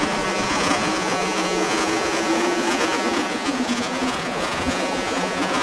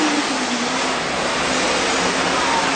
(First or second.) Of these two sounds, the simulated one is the first